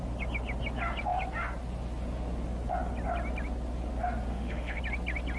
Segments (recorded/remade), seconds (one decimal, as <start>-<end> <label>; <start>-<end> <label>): 0.0-4.3 recorded; 4.3-4.8 remade; 4.8-5.4 recorded